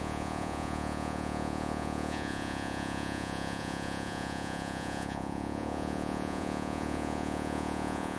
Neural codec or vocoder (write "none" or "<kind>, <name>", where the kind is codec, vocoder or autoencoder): vocoder, Vocos